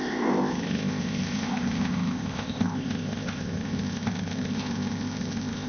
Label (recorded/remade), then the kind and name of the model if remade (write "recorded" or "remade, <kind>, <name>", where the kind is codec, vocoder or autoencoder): remade, codec, ZipCodec